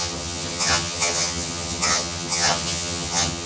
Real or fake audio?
fake